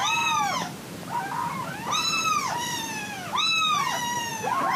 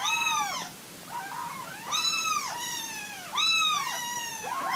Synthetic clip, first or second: second